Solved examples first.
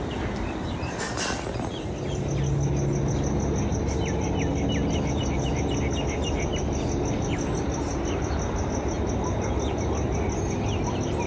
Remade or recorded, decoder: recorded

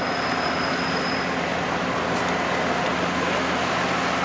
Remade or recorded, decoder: recorded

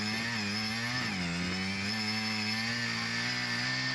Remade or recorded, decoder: recorded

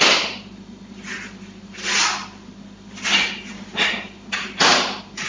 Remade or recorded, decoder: recorded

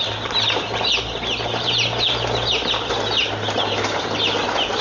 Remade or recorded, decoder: recorded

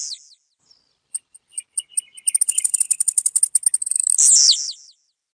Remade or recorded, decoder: recorded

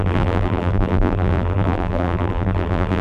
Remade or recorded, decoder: remade, vocoder, BigVGAN v2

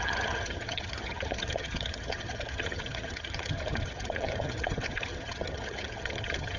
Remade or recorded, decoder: remade, vocoder, HiFi-GAN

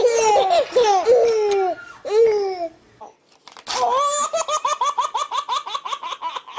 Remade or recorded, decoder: recorded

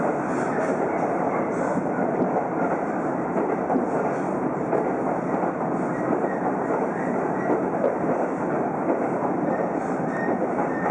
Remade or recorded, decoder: remade, vocoder, BigVGAN v2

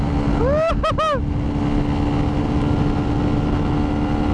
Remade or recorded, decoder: recorded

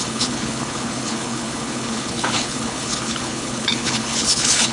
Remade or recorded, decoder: remade, codec, HILCodec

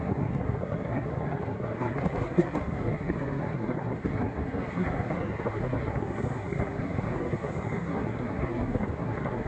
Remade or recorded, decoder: remade, codec, SNAC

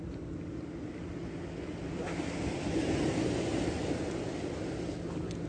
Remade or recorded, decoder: recorded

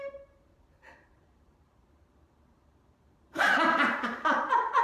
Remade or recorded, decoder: remade, vocoder, BigVGAN v2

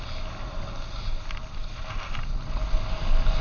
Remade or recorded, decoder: recorded